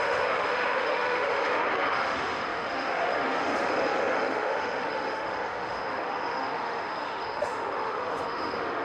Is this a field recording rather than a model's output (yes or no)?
no